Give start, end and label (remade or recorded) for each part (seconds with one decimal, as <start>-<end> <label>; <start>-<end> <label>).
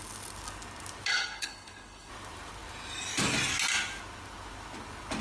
0.0-1.1 recorded; 1.1-2.1 remade; 2.1-5.2 recorded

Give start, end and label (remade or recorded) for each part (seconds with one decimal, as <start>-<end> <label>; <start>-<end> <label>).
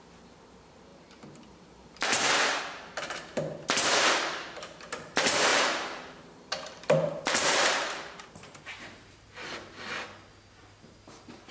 0.0-0.9 recorded; 0.9-2.6 remade; 2.6-5.5 recorded; 5.5-9.3 remade; 9.3-11.5 recorded